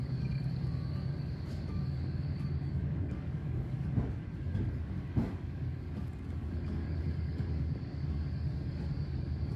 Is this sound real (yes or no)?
no